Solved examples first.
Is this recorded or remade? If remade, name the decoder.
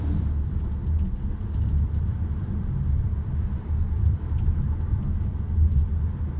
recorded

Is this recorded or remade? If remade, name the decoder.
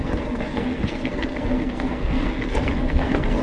remade, codec, SNAC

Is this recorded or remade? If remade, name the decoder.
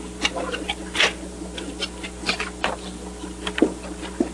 recorded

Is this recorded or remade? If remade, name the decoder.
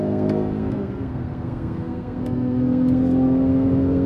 remade, codec, SNAC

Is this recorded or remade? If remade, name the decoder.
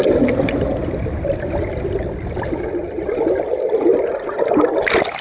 recorded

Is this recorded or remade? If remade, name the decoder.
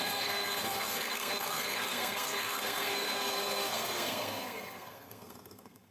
remade, codec, SNAC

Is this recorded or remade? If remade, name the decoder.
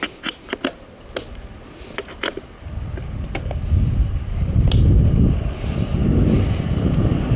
recorded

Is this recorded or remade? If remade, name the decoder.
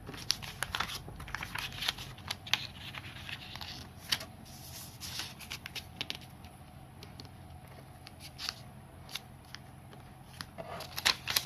recorded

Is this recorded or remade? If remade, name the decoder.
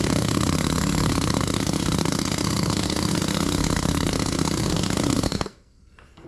remade, codec, SNAC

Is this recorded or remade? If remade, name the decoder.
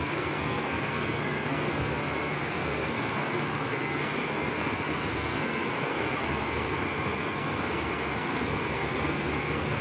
remade, codec, SNAC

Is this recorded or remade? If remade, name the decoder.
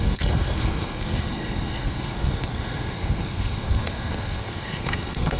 remade, codec, SNAC